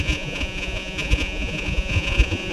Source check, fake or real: fake